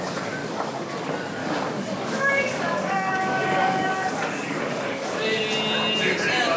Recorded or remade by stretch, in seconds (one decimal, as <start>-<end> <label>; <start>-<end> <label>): 0.0-0.4 recorded; 0.4-0.9 remade; 0.9-1.4 recorded; 1.4-5.4 remade; 5.4-6.6 recorded